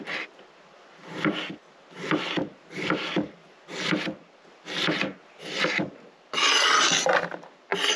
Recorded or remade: recorded